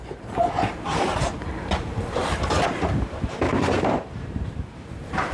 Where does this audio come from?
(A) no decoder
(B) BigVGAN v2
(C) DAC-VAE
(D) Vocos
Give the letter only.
B